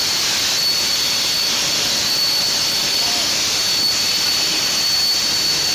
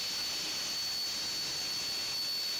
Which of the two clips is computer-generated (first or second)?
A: first